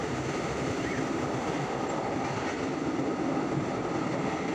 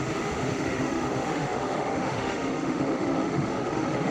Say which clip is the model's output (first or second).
second